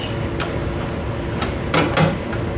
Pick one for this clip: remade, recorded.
recorded